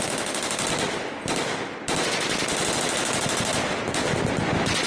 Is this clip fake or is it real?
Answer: real